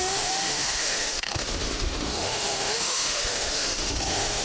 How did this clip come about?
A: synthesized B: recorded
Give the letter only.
A